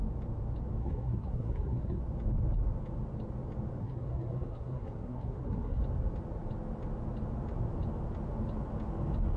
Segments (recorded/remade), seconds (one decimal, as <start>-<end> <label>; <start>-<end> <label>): 0.0-0.8 recorded; 0.8-2.0 remade; 2.0-3.8 recorded; 3.8-5.8 remade; 5.8-9.4 recorded